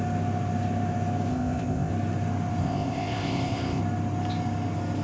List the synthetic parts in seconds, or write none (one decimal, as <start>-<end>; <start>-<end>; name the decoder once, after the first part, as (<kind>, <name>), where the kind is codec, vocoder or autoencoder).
1.3-1.9 (codec, ZipCodec); 2.6-3.8